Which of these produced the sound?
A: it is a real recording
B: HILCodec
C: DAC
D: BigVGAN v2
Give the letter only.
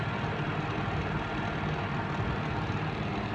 A